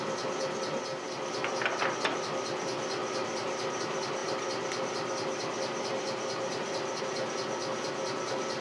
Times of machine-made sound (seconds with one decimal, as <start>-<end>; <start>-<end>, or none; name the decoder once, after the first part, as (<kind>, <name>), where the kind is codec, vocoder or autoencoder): 3.0-3.8 (vocoder, BigVGAN v2)